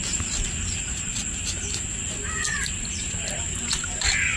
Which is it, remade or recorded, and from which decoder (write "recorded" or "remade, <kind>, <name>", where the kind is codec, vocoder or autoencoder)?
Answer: recorded